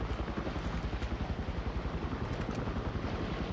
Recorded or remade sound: recorded